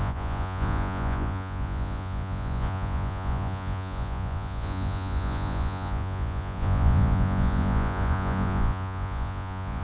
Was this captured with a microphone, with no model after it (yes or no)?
no